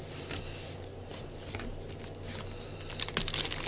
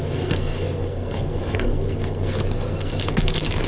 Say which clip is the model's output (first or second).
second